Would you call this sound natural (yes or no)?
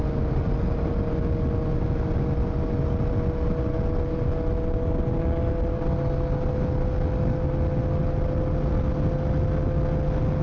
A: yes